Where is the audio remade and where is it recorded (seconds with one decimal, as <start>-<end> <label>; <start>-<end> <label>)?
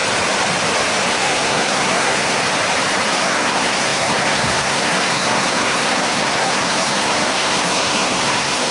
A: 0.0-1.1 recorded; 1.1-2.4 remade; 2.4-3.1 recorded; 3.1-8.7 remade